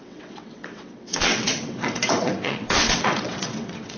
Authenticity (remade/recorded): remade